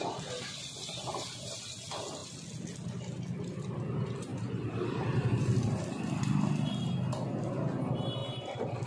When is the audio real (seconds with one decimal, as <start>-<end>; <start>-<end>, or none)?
0.0-4.3; 6.2-8.9